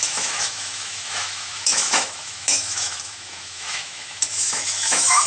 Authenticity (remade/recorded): remade